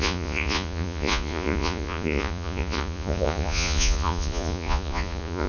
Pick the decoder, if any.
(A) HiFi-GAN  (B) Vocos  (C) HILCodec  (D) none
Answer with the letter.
B